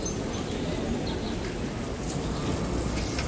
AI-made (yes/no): no